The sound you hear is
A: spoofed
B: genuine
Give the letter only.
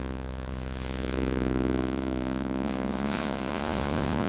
A